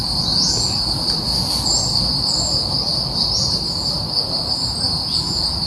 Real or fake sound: real